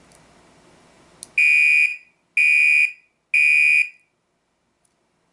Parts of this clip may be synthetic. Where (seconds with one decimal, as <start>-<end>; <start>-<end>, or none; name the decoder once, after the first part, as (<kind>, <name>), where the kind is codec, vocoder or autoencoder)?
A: none